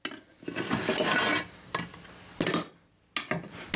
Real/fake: real